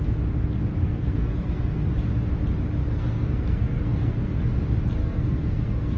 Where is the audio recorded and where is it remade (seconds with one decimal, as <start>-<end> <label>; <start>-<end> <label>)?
0.0-0.8 recorded; 0.8-1.9 remade; 1.9-2.8 recorded; 2.8-4.4 remade; 4.4-5.0 recorded; 5.0-6.0 remade